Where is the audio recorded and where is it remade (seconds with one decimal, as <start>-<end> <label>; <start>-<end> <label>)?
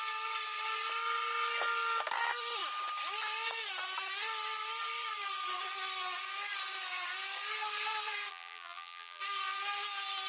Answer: 0.0-8.3 recorded; 8.3-9.2 remade; 9.2-10.3 recorded